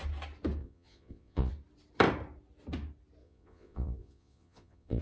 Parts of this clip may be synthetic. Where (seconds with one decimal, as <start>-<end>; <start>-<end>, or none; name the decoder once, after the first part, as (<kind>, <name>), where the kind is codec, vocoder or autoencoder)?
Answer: 0.6-1.5 (vocoder, Vocos); 3.2-5.0